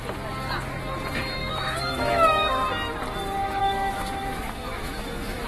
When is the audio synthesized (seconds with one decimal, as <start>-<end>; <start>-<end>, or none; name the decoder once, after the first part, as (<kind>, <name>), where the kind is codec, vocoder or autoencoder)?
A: 1.4-2.7 (autoencoder, DAC-VAE); 3.6-5.5